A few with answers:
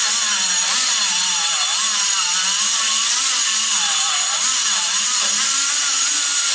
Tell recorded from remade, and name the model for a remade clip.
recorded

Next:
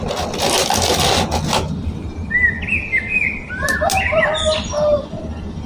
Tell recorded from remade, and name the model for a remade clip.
recorded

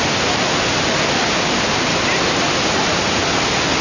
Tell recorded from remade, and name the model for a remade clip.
recorded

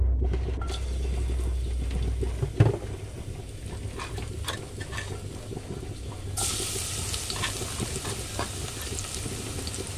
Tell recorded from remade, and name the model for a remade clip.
recorded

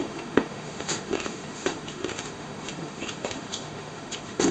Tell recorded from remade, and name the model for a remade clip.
remade, autoencoder, DAC-VAE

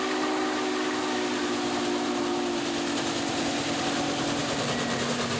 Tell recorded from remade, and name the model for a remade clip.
recorded